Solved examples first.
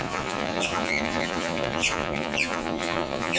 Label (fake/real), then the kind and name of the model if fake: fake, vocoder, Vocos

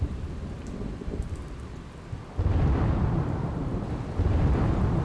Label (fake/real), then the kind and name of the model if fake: real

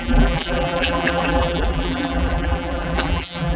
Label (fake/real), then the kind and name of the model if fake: fake, vocoder, BigVGAN v2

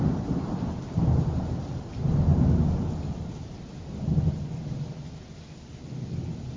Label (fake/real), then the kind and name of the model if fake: real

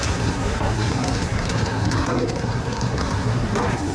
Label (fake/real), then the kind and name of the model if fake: fake, codec, SNAC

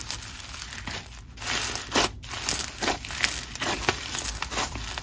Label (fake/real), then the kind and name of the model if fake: real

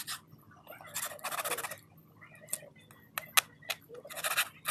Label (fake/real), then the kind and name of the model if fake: real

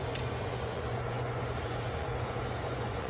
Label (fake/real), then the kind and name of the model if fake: fake, vocoder, Vocos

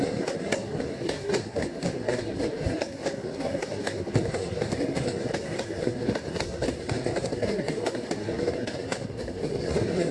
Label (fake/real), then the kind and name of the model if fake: fake, codec, SNAC